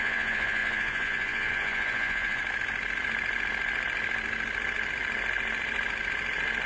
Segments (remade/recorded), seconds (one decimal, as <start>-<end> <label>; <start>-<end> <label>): 0.0-2.4 remade; 2.4-6.7 recorded